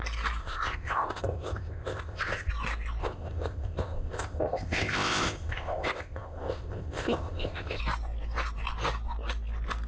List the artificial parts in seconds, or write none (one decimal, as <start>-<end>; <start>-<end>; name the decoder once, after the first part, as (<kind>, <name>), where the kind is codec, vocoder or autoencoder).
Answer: 0.4-2.5 (codec, ZipCodec); 3.0-7.8